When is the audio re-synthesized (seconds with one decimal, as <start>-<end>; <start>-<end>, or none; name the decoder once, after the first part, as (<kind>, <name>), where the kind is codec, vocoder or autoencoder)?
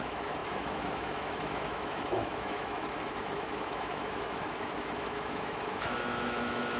0.0-6.8 (autoencoder, DAC-VAE)